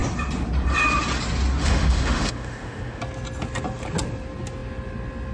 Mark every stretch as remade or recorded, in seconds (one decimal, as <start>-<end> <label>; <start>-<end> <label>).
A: 0.0-1.6 recorded; 1.6-3.0 remade; 3.0-5.3 recorded